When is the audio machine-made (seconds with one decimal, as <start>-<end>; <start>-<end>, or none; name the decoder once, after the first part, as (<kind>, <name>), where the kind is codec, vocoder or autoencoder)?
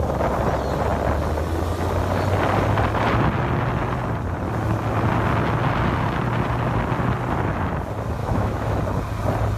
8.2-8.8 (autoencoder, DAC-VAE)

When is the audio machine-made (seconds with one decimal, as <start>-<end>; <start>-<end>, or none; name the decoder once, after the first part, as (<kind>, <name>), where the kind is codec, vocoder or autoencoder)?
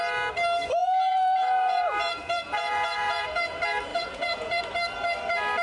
0.8-3.5 (vocoder, Vocos); 3.9-4.6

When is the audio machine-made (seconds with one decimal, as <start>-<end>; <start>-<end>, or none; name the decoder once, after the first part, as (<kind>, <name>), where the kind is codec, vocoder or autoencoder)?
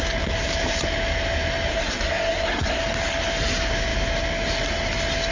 1.7-2.8 (codec, SNAC)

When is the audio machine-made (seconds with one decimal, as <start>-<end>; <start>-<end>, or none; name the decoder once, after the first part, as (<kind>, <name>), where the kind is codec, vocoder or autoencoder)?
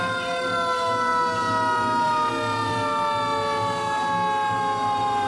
none